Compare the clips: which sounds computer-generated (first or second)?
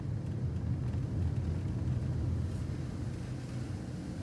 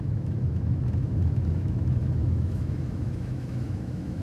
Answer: second